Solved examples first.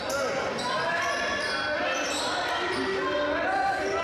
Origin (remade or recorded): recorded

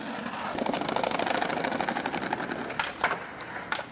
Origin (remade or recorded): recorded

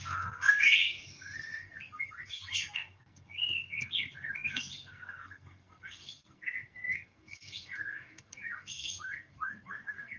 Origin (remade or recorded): remade